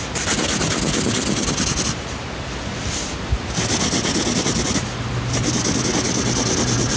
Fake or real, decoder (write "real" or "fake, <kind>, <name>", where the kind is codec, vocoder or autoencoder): real